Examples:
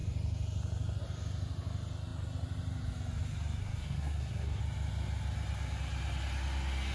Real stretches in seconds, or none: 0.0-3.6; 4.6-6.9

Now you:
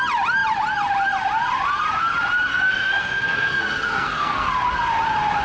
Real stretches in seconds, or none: 0.0-2.5; 4.5-5.4

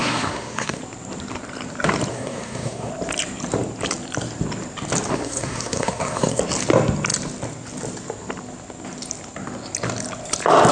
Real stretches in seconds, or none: 0.8-2.1; 2.9-5.1; 6.4-10.7

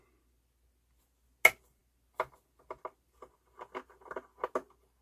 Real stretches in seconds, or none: 0.0-5.0

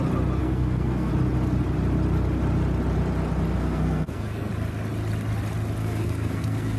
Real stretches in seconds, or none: 0.0-0.4; 1.1-3.6; 4.5-5.8

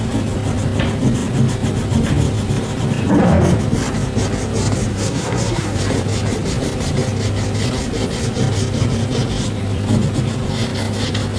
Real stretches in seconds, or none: 0.0-4.9; 5.8-11.4

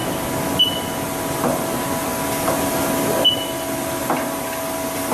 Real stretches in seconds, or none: 0.0-5.1